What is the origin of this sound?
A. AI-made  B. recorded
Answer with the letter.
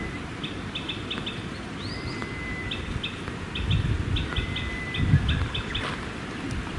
B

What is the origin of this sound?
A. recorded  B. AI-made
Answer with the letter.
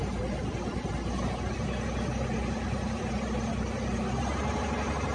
A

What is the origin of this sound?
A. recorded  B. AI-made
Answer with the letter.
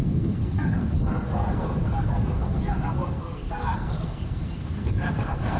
B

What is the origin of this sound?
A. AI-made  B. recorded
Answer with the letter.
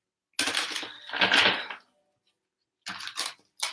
B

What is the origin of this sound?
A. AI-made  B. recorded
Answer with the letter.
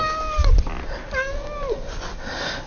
B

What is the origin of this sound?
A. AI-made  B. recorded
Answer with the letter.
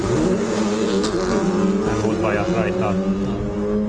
B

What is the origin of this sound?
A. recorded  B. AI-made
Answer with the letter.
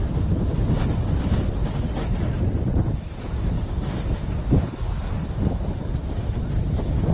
A